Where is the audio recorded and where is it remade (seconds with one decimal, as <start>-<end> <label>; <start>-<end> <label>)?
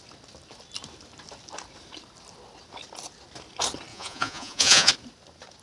0.0-3.9 recorded; 3.9-4.9 remade; 4.9-5.6 recorded